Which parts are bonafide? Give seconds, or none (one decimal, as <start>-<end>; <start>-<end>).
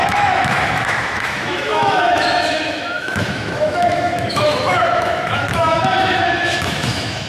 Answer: none